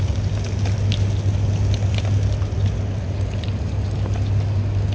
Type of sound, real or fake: real